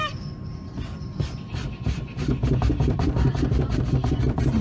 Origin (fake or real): fake